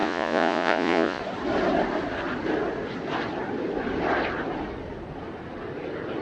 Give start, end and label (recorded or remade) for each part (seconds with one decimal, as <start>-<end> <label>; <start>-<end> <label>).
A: 0.0-1.2 remade; 1.2-6.2 recorded